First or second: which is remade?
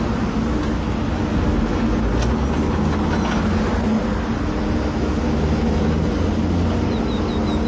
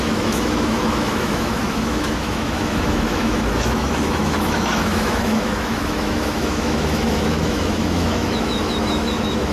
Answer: second